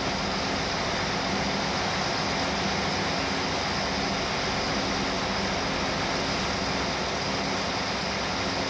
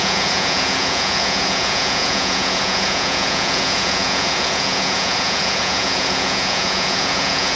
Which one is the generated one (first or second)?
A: second